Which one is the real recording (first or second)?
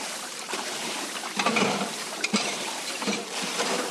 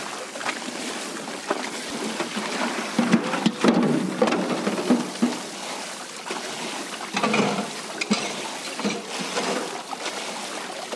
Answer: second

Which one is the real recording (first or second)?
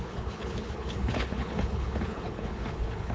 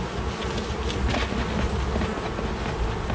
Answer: second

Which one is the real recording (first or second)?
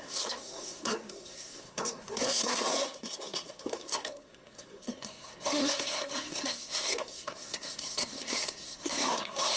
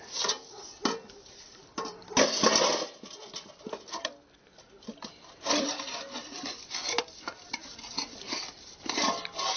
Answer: second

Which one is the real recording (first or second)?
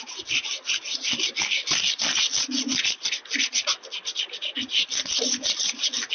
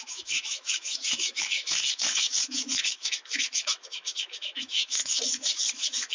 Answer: first